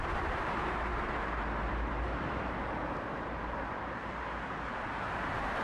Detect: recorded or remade remade